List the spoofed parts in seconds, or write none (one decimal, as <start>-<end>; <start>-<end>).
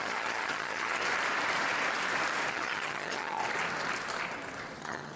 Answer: 0.0-1.0; 2.5-3.4; 4.8-5.2